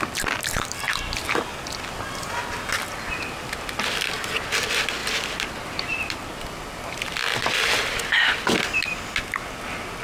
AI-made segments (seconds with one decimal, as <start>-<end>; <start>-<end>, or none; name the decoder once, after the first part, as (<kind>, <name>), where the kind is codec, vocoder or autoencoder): 5.0-8.7 (vocoder, BigVGAN v2)